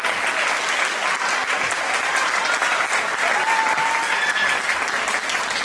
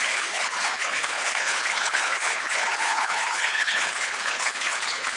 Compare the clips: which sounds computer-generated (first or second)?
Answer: second